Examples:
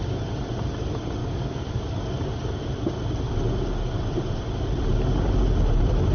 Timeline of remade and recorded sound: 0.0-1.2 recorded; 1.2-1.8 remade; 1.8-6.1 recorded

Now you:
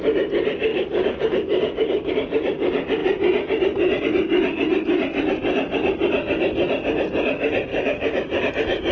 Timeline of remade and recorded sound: 0.0-0.7 recorded; 0.7-2.1 remade; 2.1-7.7 recorded; 7.7-8.5 remade; 8.5-8.9 recorded

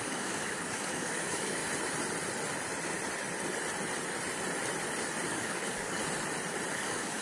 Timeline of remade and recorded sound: 0.0-1.6 remade; 1.6-5.3 recorded; 5.3-6.0 remade; 6.0-6.7 recorded; 6.7-7.2 remade